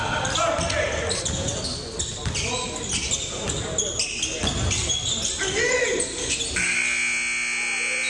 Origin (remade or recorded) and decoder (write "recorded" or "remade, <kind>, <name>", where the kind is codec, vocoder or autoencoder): recorded